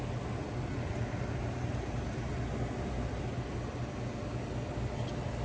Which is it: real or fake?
real